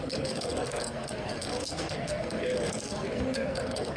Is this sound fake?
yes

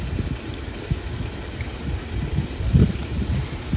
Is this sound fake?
no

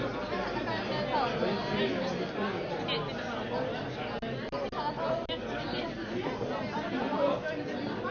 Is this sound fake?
no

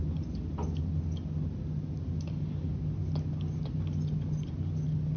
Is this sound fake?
no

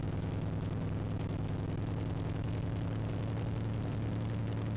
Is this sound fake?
no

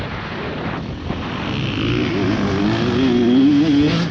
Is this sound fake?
no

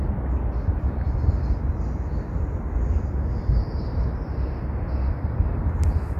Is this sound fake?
no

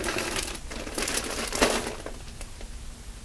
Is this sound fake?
no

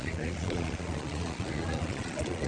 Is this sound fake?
yes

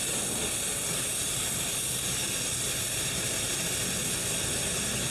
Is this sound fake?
no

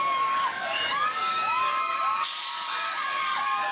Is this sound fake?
yes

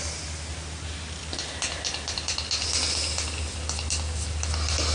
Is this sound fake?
no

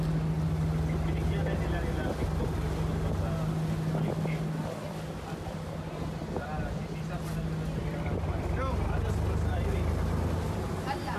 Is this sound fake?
no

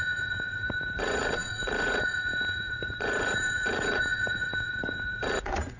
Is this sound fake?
yes